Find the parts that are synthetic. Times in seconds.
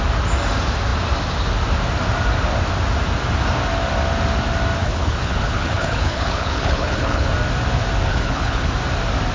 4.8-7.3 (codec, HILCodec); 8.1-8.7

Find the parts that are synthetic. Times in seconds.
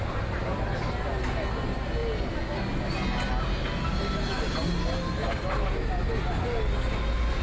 none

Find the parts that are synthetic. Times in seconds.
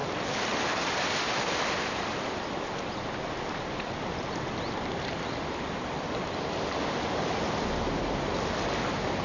none